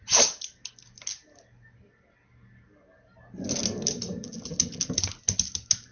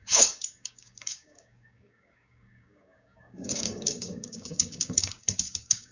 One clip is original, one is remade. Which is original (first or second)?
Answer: first